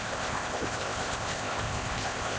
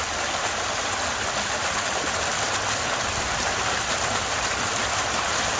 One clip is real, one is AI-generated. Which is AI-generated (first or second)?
first